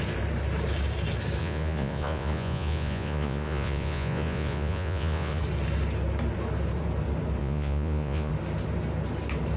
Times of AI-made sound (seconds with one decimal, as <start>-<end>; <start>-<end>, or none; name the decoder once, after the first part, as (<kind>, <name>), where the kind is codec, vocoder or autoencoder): 1.4-5.4 (vocoder, Vocos); 7.4-8.3